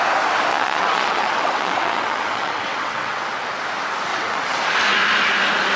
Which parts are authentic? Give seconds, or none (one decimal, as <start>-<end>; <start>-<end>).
0.0-0.5; 3.2-4.1; 4.6-5.8